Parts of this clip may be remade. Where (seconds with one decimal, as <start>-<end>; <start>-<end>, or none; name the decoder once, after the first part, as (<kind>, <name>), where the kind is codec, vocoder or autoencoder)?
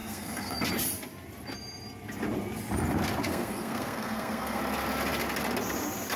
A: 0.0-0.6 (codec, SNAC); 3.3-4.6